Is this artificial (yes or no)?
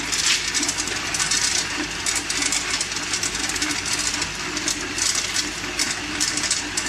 no